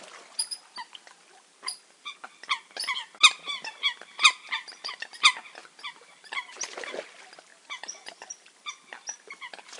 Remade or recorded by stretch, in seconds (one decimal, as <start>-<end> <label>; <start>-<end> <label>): 0.0-5.6 recorded; 5.6-6.6 remade; 6.6-7.5 recorded; 7.5-8.7 remade; 8.7-9.8 recorded